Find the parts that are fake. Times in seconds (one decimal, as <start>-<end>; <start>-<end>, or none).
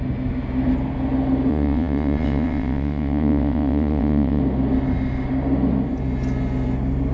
1.5-4.4